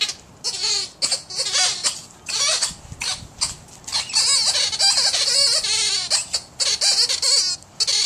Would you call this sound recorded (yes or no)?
yes